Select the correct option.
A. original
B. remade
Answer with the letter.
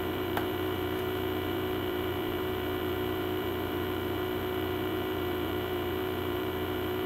B